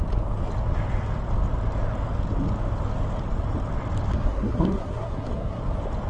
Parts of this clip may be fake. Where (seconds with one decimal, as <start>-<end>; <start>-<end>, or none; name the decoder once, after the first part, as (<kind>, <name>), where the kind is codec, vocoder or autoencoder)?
4.1-5.6 (codec, SNAC)